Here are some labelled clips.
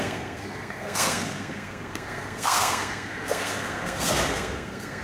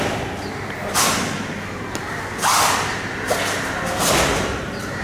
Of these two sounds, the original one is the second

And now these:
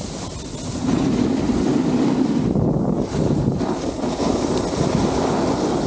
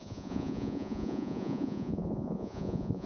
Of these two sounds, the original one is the first